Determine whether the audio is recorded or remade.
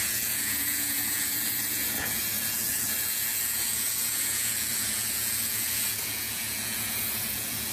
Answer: remade